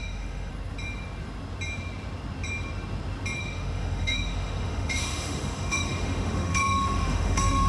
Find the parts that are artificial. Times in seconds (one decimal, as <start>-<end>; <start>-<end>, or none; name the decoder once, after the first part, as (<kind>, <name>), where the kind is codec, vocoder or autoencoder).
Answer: 0.0-0.5 (autoencoder, DAC-VAE); 3.4-7.7